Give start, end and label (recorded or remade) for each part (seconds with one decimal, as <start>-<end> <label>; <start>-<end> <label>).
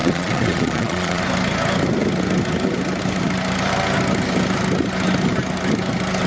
0.0-1.2 remade; 1.2-6.3 recorded